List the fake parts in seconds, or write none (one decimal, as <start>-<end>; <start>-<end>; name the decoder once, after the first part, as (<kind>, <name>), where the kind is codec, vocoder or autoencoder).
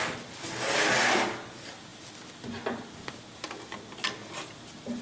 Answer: none